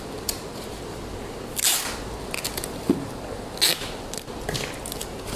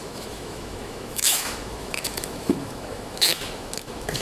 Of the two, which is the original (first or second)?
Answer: first